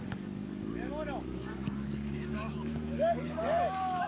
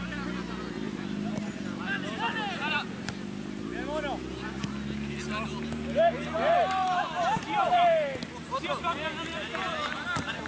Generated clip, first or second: first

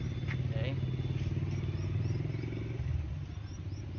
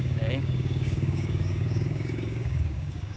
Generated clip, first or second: second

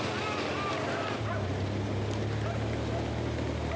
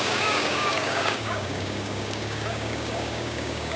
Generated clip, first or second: second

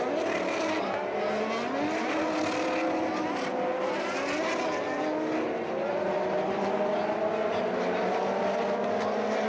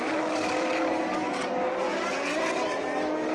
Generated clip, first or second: second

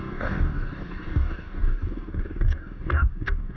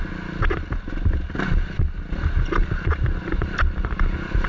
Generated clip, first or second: first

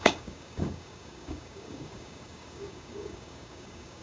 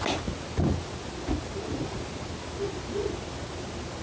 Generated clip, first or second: first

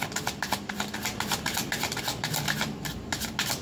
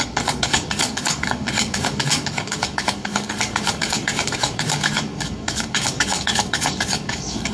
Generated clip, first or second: second